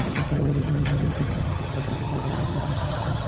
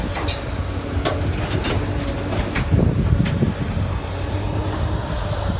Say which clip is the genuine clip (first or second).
second